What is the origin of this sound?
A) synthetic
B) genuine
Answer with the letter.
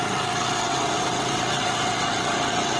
A